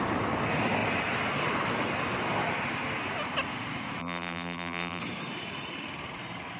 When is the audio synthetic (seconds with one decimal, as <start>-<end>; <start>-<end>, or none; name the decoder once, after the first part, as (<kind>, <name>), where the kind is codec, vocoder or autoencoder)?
4.0-5.0 (vocoder, BigVGAN v2)